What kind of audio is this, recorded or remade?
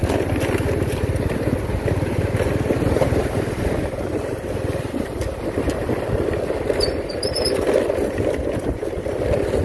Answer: recorded